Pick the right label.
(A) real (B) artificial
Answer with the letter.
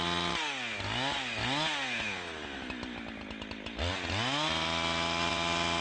A